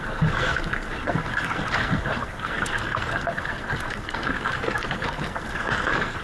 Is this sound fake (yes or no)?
yes